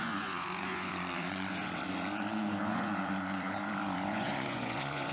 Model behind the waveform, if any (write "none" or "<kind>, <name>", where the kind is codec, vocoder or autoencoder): vocoder, Vocos